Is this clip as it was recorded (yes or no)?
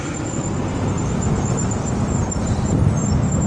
yes